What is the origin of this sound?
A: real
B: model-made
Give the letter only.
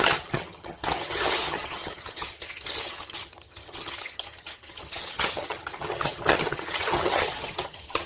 B